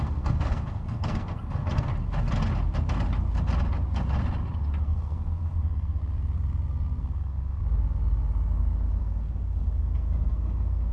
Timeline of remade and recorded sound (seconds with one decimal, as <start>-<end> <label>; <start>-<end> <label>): 0.0-1.9 remade; 1.9-4.8 recorded; 4.8-6.0 remade; 6.0-7.0 recorded; 7.0-7.6 remade; 7.6-9.0 recorded; 9.0-10.9 remade

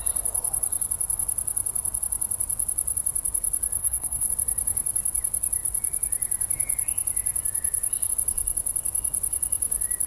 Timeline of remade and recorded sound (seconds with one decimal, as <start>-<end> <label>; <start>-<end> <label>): 0.0-3.8 recorded; 3.8-4.3 remade; 4.3-10.1 recorded

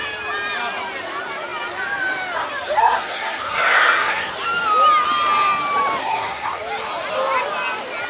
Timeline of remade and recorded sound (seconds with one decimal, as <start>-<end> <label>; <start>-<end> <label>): 0.0-2.8 recorded; 2.8-4.3 remade; 4.3-6.0 recorded; 6.0-6.6 remade; 6.6-8.1 recorded